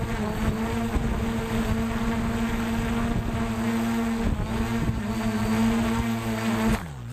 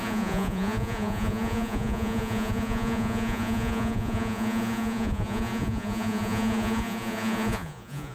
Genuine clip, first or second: first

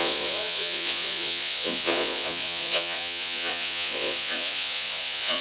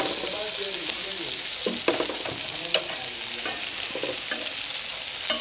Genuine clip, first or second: second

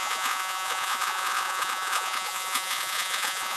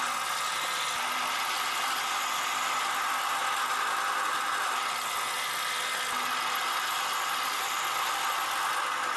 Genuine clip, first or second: second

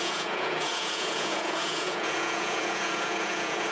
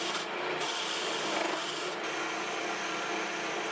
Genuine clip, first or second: second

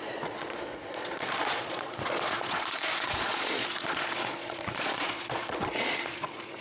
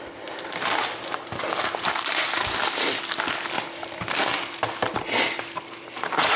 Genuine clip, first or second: second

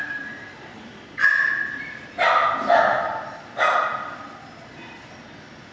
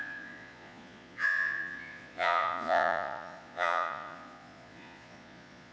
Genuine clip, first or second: first